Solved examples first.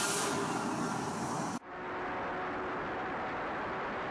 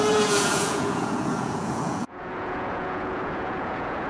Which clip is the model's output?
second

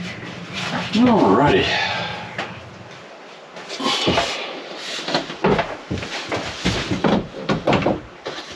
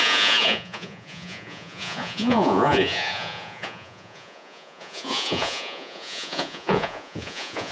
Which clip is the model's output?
second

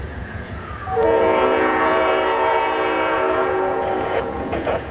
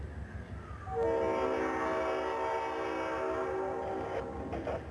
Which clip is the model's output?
first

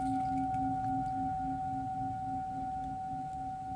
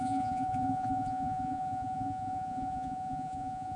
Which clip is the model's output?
second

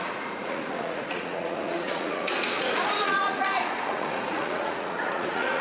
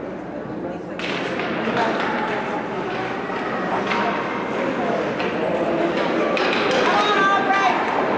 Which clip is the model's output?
first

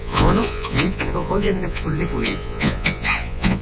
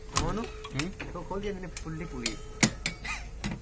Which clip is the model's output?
first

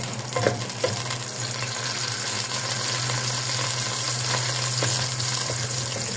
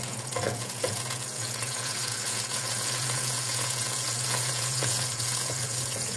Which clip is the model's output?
second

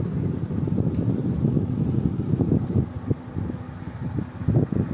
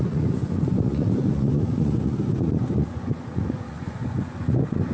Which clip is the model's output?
second